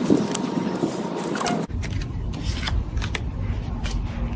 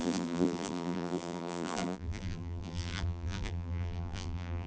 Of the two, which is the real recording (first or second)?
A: first